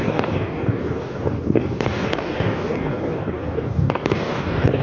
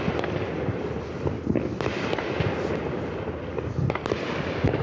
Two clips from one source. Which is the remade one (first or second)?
first